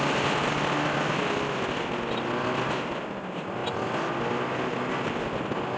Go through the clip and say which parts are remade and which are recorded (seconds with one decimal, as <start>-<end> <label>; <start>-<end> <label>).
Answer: 0.0-5.8 recorded